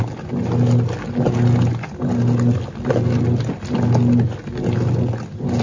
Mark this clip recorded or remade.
recorded